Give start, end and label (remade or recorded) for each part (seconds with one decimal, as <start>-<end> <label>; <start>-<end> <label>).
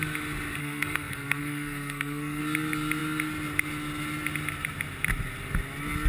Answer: 0.0-0.6 recorded; 0.6-2.4 remade; 2.4-6.1 recorded